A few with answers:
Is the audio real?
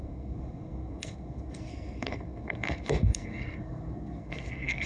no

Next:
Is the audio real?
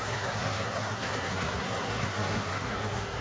no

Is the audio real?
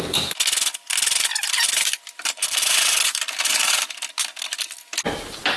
yes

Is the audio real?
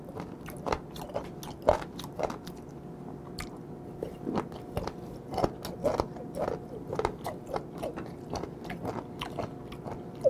yes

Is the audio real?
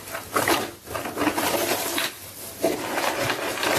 yes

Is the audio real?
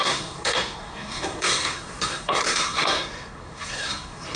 no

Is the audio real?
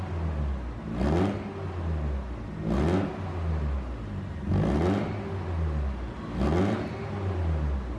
yes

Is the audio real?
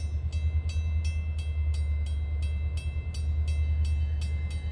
yes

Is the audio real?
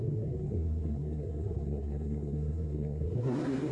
no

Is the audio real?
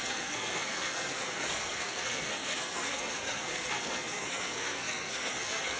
no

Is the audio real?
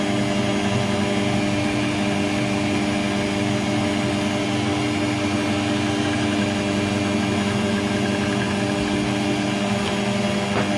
yes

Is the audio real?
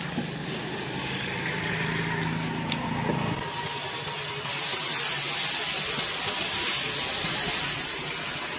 yes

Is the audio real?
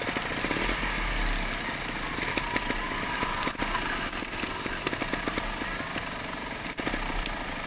yes